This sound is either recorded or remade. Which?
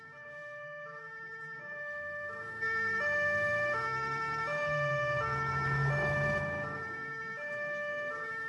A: remade